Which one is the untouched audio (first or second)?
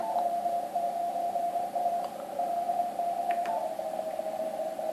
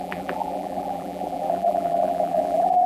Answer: first